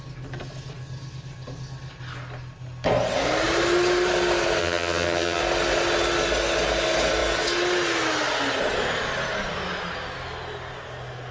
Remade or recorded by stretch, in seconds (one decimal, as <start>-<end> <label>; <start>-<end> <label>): 0.0-4.6 recorded; 4.6-5.4 remade; 5.4-11.3 recorded